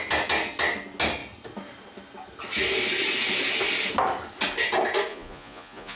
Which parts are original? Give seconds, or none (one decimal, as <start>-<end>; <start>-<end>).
0.0-5.1

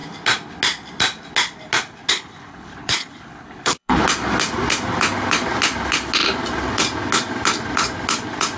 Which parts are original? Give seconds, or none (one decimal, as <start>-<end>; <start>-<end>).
0.0-2.1; 4.0-8.6

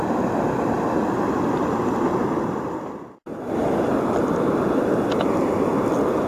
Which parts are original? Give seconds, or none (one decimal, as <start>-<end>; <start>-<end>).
0.0-6.3